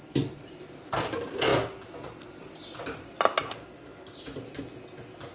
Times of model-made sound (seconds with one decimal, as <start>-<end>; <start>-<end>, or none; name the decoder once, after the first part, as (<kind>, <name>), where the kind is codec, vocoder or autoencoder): none

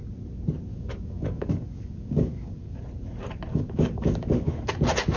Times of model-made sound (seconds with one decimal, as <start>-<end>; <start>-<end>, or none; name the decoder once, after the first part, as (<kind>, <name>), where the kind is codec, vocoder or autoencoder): 0.7-2.8 (codec, DAC); 3.5-4.7

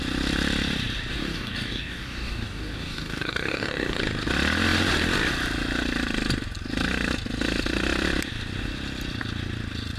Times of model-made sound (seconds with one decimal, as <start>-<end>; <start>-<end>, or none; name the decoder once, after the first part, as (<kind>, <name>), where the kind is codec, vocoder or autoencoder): 1.1-4.0 (codec, DAC)

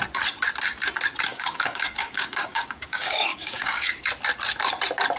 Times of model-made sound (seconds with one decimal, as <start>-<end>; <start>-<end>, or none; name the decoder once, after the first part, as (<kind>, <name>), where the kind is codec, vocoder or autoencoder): 1.3-4.1 (codec, DAC)

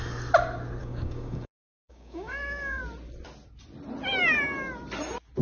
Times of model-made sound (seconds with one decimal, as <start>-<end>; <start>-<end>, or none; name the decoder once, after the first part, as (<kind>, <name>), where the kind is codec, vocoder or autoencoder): 0.8-2.8 (codec, DAC)

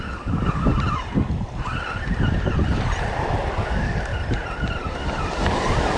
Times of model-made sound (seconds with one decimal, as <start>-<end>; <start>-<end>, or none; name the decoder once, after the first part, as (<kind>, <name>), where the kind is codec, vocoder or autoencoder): 0.0-0.7 (codec, DAC); 3.5-4.1